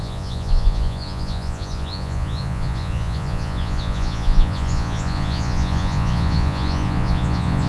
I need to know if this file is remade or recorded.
remade